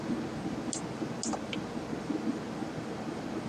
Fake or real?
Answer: real